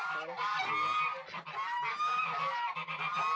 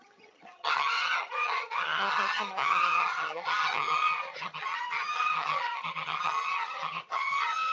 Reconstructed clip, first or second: second